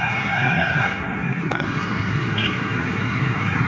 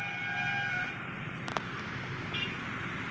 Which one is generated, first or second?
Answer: first